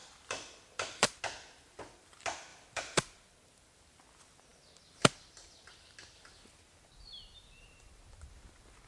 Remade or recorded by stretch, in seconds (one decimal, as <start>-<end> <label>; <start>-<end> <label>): 0.0-1.2 remade; 1.2-2.5 recorded; 2.5-3.7 remade; 3.7-8.9 recorded